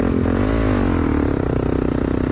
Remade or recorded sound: recorded